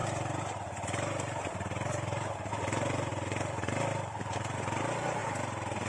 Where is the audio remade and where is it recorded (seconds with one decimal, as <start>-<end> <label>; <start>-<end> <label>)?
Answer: 0.0-2.5 remade; 2.5-3.1 recorded; 3.1-3.7 remade; 3.7-5.2 recorded; 5.2-5.9 remade